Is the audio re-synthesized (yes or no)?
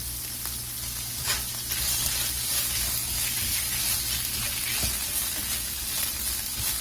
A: no